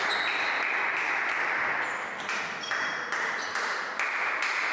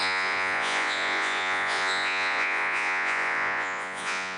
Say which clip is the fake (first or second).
second